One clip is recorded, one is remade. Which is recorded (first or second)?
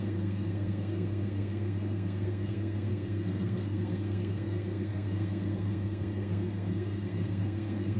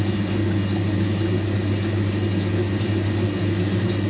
second